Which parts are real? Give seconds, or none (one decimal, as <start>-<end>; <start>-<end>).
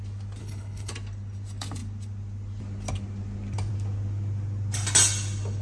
0.0-0.4; 0.9-5.6